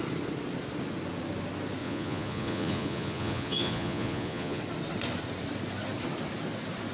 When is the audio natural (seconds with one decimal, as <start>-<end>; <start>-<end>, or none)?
0.0-1.8; 4.6-6.9